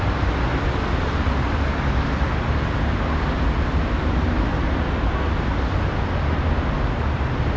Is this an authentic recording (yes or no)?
yes